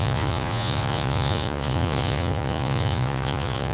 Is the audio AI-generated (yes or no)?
yes